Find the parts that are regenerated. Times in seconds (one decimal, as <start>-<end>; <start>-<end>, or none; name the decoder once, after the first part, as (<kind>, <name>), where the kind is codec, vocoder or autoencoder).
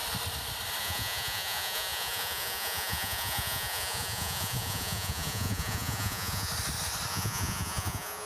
0.8-6.5 (vocoder, Vocos); 7.1-8.3